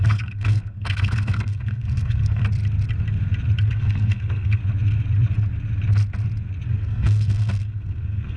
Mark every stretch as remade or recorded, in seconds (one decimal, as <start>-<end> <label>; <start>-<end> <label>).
0.0-2.4 remade; 2.4-3.7 recorded; 3.7-4.6 remade; 4.6-6.7 recorded; 6.7-8.4 remade